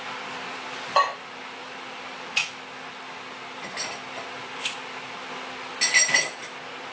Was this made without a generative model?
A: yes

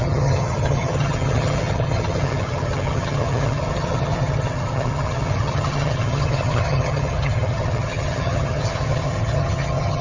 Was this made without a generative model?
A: no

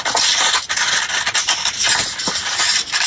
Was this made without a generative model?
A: yes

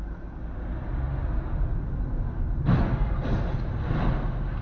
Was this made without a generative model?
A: yes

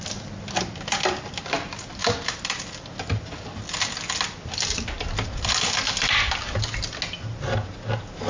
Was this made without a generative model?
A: yes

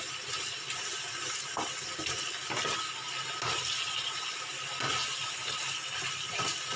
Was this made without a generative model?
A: yes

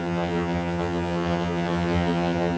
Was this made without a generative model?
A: no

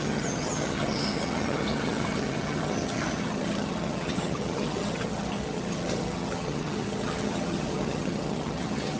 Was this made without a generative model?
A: no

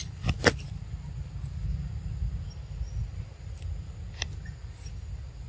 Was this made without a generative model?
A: yes